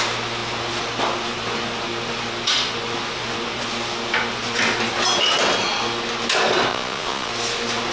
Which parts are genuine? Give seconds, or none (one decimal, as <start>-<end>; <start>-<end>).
0.0-6.7; 7.3-7.9